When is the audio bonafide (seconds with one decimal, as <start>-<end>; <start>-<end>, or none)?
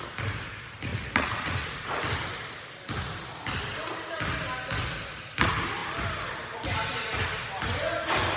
0.0-0.9; 2.0-8.4